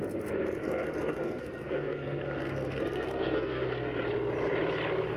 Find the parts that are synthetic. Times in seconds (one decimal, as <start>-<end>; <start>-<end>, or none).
0.6-3.7